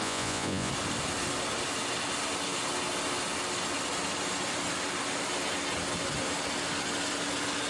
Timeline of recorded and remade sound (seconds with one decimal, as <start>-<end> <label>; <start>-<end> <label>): 0.0-0.7 remade; 0.7-7.7 recorded